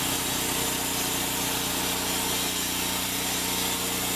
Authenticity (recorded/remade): recorded